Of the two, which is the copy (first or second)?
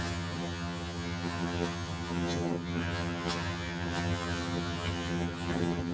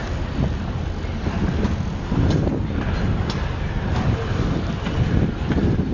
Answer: first